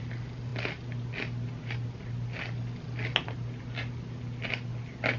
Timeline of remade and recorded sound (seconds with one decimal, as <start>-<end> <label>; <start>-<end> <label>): 0.0-5.2 recorded